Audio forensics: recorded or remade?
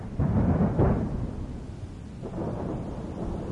recorded